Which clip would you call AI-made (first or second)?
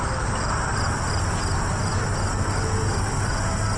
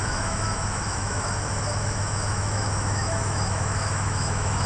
second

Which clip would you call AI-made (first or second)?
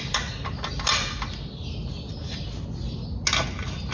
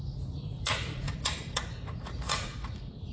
second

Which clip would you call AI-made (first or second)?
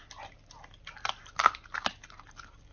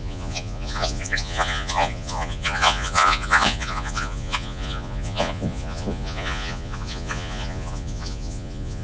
second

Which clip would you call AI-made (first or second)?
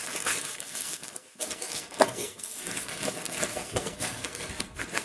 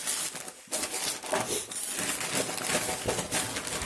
first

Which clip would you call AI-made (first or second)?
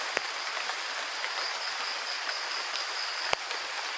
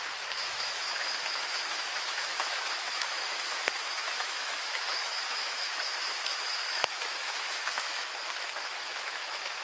second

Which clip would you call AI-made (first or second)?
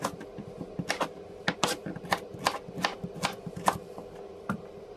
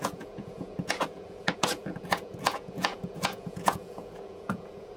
second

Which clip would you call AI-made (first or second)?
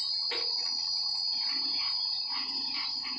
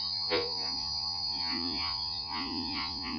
second